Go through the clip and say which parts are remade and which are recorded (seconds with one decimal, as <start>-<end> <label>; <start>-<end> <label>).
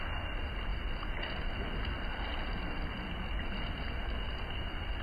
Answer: 0.0-0.7 recorded; 0.7-3.7 remade; 3.7-5.0 recorded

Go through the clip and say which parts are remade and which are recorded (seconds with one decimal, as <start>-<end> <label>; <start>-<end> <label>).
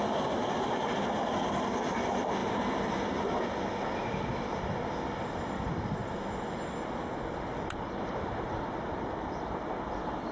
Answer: 0.0-6.0 recorded; 6.0-9.9 remade; 9.9-10.3 recorded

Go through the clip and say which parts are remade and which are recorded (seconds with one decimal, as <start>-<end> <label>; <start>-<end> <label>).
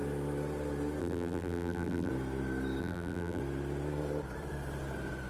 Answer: 0.0-1.0 recorded; 1.0-2.1 remade; 2.1-2.8 recorded; 2.8-3.4 remade; 3.4-5.3 recorded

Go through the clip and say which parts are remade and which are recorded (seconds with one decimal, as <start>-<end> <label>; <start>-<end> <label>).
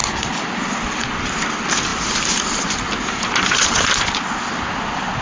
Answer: 0.0-1.9 remade; 1.9-5.2 recorded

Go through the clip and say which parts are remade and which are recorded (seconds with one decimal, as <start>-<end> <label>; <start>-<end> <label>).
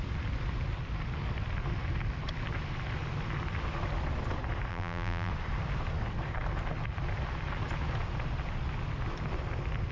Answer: 0.0-4.7 recorded; 4.7-5.3 remade; 5.3-9.9 recorded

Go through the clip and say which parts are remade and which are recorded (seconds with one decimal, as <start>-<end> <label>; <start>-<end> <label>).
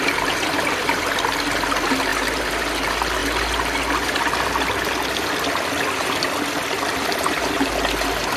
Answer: 0.0-2.1 recorded; 2.1-2.7 remade; 2.7-8.4 recorded